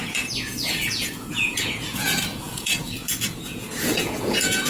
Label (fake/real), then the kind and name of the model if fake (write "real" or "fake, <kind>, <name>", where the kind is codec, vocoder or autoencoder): fake, vocoder, Vocos